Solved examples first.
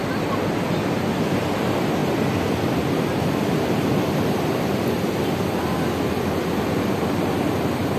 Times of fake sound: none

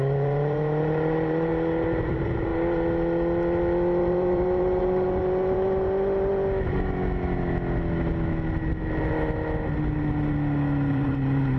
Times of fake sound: 0.0-1.5; 2.1-2.5; 4.0-6.3; 10.9-11.6